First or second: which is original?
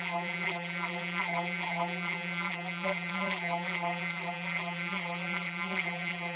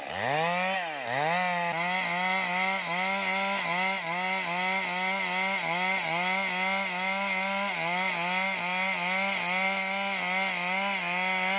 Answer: second